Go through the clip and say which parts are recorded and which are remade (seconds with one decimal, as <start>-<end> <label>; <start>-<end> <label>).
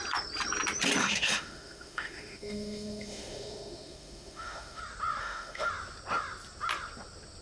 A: 0.0-1.0 recorded; 1.0-4.8 remade; 4.8-5.2 recorded; 5.2-5.7 remade; 5.7-7.4 recorded